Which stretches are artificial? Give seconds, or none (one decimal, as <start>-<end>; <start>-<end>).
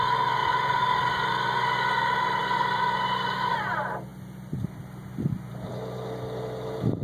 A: none